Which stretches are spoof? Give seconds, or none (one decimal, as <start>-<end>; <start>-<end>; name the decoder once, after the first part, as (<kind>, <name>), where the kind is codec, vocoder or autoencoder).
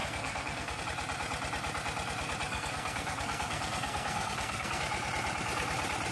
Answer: 0.0-0.8 (codec, SNAC); 2.5-4.8